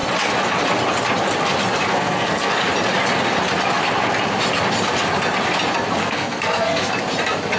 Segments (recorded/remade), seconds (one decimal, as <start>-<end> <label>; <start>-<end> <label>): 0.0-1.9 recorded; 1.9-2.5 remade; 2.5-6.0 recorded; 6.0-6.9 remade; 6.9-7.6 recorded